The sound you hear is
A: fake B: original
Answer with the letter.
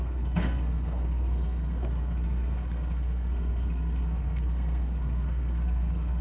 A